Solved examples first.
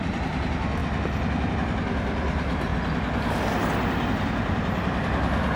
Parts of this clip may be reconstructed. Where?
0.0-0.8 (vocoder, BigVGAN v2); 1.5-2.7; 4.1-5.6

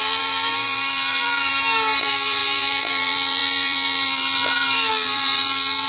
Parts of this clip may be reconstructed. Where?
0.0-1.5 (vocoder, BigVGAN v2); 2.0-5.9

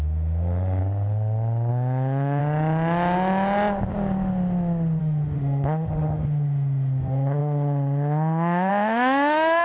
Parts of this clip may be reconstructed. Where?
0.0-0.8 (autoencoder, DAC-VAE); 1.7-2.4; 5.0-9.6

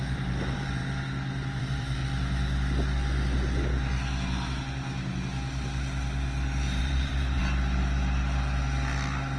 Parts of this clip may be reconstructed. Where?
0.0-0.8 (vocoder, BigVGAN v2); 1.6-2.0; 6.8-7.4

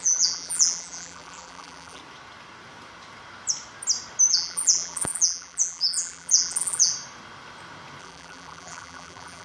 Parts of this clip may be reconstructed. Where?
0.0-2.0 (vocoder, BigVGAN v2); 4.3-6.9; 8.0-9.4

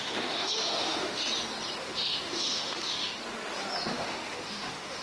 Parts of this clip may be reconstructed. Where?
0.0-1.2 (autoencoder, DAC-VAE); 1.8-3.2; 3.8-5.0

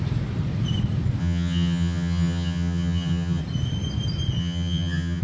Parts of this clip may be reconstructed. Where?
1.2-3.4 (vocoder, HiFi-GAN); 4.4-5.2